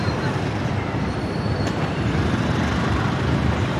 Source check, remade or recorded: remade